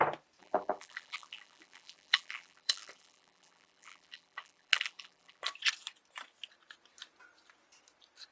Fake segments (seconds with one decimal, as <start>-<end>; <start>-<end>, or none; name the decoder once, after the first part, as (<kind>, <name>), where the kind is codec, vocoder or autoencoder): 0.4-5.4 (vocoder, BigVGAN v2)